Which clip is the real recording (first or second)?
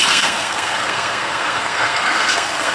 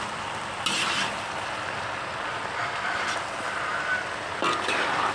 second